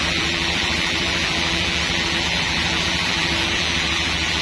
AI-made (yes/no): yes